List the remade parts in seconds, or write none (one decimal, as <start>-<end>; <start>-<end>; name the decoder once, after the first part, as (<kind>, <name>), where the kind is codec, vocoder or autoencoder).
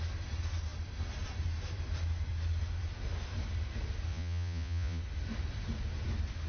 4.1-5.0 (vocoder, Vocos)